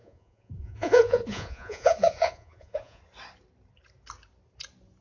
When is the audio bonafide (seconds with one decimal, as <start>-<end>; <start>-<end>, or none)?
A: 3.0-5.0